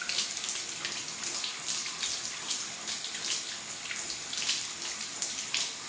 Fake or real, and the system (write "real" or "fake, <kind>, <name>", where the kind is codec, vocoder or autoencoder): real